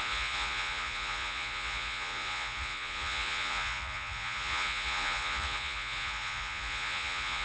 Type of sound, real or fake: fake